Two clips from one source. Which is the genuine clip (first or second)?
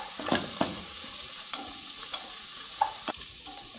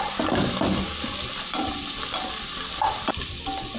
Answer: second